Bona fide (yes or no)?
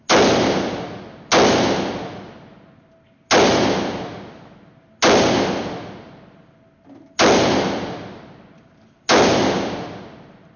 yes